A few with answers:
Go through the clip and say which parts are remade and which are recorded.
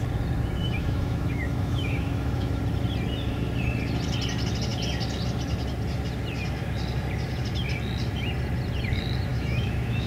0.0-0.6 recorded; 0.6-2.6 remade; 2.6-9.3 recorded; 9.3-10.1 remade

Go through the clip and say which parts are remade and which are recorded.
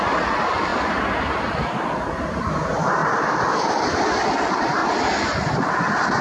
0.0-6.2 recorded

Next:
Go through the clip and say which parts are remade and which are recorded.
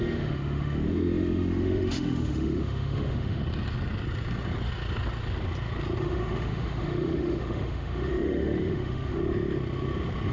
0.0-3.4 remade; 3.4-6.0 recorded; 6.0-9.2 remade; 9.2-10.3 recorded